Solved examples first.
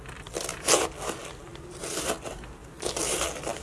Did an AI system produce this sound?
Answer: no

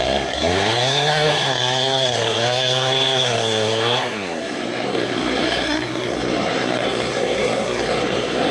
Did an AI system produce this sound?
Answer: yes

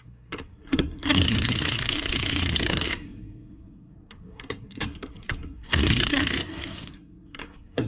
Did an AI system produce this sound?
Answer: yes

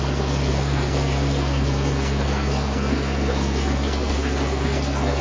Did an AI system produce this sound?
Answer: yes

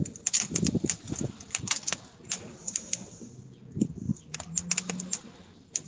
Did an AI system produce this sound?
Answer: no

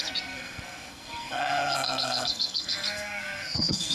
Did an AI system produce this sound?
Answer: yes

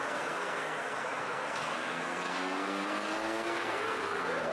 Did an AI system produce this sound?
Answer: yes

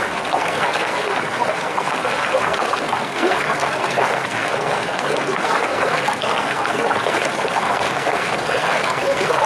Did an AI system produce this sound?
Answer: yes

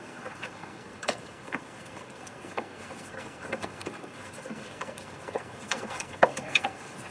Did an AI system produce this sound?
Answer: yes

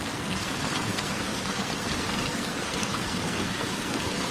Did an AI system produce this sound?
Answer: yes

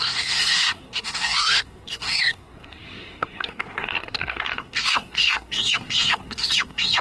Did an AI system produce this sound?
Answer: yes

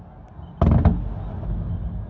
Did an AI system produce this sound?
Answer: no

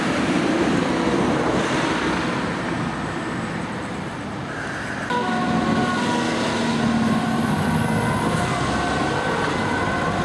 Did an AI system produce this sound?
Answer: no